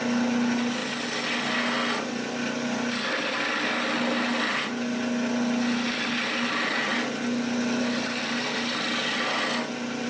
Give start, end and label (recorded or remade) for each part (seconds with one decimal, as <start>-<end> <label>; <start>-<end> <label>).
0.0-10.1 recorded